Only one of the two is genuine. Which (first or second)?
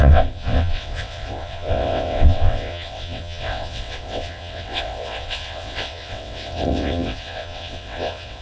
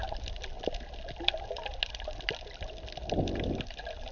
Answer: second